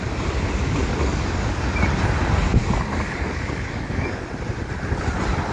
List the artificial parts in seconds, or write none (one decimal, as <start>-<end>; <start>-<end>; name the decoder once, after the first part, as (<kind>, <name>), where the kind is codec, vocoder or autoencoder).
0.8-1.6 (codec, DAC); 2.6-4.3